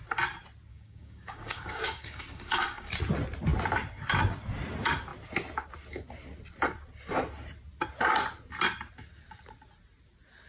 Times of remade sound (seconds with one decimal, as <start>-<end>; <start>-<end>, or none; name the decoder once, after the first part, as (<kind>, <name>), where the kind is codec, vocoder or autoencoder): 0.7-2.9 (codec, DAC)